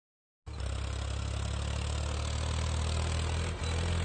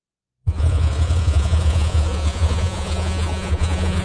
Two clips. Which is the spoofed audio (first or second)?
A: second